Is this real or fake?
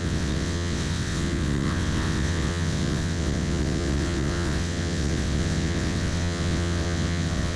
fake